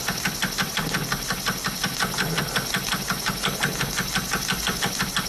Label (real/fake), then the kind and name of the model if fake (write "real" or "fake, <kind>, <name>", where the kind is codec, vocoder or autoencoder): real